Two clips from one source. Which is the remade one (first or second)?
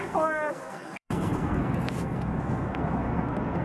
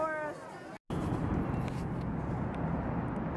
first